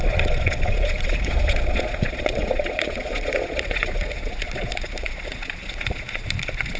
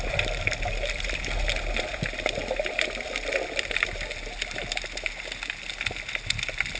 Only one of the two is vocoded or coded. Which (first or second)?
first